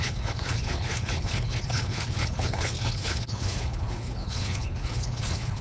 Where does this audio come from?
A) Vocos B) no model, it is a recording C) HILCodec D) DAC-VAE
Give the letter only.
C